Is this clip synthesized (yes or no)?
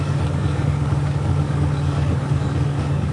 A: yes